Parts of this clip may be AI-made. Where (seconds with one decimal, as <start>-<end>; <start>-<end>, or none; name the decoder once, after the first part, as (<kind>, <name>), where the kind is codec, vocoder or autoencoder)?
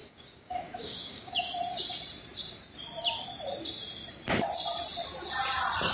0.0-1.3 (codec, DAC)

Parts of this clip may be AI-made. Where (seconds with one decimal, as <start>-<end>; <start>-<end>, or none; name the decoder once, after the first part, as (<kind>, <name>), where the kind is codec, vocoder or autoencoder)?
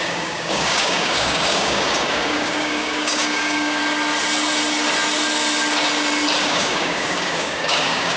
0.0-3.8 (codec, DAC); 6.4-8.2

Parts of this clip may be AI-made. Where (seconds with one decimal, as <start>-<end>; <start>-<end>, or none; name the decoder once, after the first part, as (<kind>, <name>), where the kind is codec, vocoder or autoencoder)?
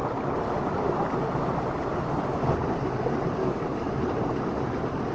3.4-4.0 (codec, DAC)